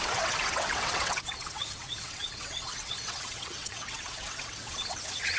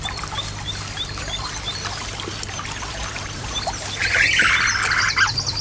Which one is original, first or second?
second